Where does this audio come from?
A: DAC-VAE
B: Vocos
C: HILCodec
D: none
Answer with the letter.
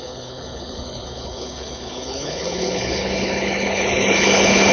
C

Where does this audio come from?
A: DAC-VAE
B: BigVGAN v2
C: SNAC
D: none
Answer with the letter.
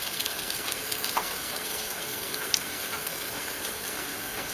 C